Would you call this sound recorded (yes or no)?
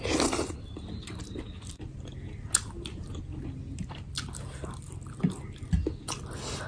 yes